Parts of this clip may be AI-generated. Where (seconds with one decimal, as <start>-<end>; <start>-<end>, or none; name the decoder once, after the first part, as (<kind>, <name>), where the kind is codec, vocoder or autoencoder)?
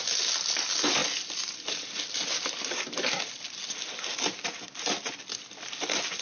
none